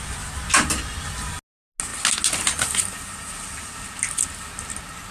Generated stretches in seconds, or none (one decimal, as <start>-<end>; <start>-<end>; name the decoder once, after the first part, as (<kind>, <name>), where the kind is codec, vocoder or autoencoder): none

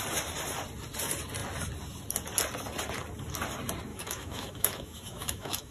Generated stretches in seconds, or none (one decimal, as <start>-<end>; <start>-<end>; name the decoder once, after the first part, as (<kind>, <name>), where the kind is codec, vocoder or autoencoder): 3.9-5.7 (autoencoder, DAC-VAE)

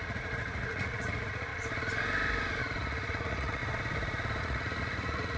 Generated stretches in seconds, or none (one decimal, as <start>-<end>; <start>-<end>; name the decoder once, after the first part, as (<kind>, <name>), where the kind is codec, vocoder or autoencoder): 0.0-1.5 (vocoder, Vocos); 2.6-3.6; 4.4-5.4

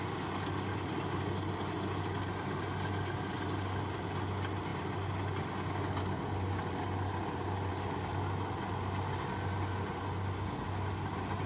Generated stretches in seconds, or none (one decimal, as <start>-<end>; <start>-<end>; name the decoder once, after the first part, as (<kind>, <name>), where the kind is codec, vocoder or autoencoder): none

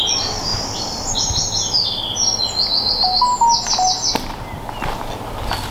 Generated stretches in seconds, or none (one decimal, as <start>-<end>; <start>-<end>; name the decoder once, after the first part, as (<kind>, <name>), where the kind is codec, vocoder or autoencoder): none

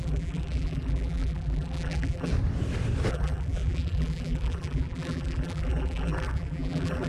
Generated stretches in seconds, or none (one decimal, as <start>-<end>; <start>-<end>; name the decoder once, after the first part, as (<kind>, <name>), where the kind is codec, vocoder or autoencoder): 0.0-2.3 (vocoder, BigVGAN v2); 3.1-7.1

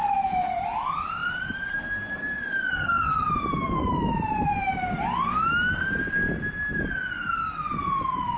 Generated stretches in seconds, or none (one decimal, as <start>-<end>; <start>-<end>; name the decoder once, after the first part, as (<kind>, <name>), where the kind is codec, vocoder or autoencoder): 2.7-3.3 (vocoder, HiFi-GAN)